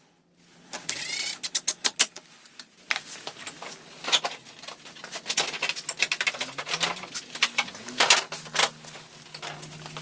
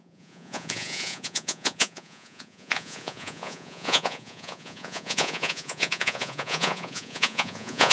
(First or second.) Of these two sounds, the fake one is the second